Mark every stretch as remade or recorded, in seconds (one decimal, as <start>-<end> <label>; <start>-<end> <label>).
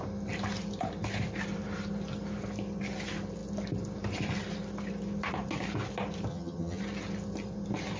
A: 0.0-6.3 recorded; 6.3-6.8 remade; 6.8-8.0 recorded